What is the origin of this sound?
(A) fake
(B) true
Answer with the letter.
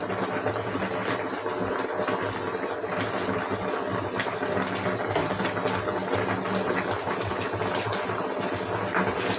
B